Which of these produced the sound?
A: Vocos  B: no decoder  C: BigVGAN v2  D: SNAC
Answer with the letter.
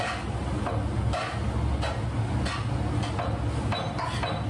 B